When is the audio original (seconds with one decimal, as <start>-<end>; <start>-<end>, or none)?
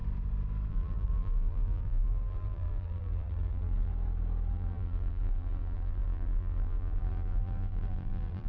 0.0-0.7; 3.9-4.5